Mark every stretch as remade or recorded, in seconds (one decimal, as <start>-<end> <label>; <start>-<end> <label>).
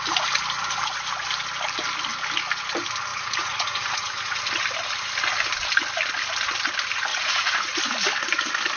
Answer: 0.0-3.1 recorded; 3.1-4.4 remade; 4.4-7.1 recorded; 7.1-7.8 remade; 7.8-8.8 recorded